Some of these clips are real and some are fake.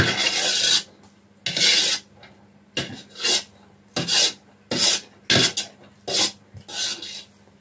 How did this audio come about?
real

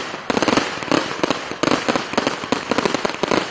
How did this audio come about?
real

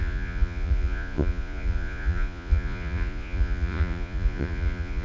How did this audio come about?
fake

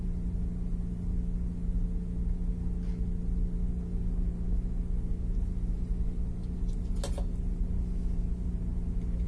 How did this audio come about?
real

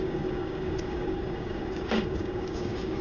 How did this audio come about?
fake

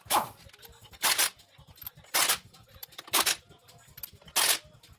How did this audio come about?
real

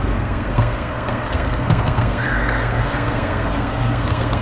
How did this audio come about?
fake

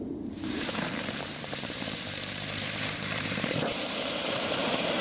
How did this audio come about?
fake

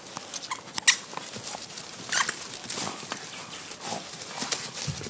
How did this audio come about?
real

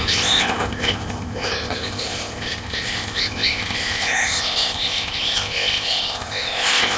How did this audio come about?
fake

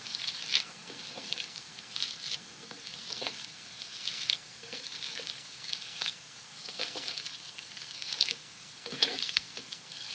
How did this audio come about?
fake